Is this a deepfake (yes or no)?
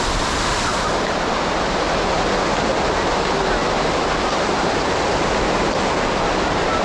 no